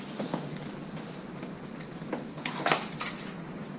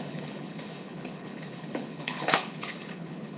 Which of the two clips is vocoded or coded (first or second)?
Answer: second